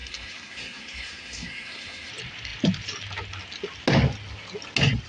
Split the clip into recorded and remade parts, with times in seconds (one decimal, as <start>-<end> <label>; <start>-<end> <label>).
0.0-2.1 remade; 2.1-5.1 recorded

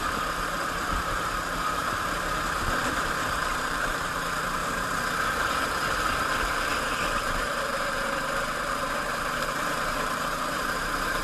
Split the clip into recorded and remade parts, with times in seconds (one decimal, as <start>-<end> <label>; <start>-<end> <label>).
0.0-1.8 remade; 1.8-2.8 recorded; 2.8-4.6 remade; 4.6-5.2 recorded; 5.2-11.2 remade

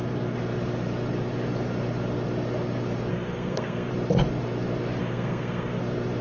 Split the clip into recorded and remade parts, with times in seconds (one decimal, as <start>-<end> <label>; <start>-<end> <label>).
0.0-3.1 recorded; 3.1-3.9 remade; 3.9-5.0 recorded; 5.0-5.8 remade; 5.8-6.2 recorded

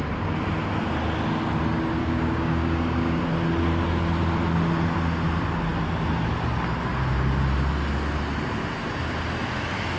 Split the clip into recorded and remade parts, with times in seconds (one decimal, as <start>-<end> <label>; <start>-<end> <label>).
0.0-2.0 recorded; 2.0-3.2 remade; 3.2-10.0 recorded

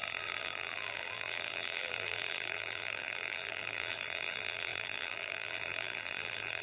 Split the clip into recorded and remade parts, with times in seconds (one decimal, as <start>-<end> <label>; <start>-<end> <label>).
0.0-6.6 remade